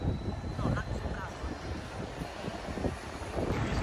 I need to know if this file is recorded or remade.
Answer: recorded